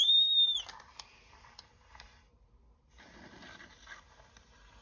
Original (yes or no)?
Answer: yes